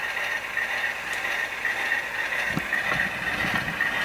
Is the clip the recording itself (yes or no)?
yes